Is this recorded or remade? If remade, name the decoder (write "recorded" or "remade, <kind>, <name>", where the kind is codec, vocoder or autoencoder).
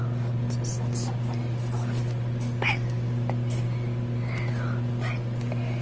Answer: recorded